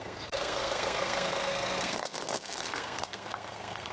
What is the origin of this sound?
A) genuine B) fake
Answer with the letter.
B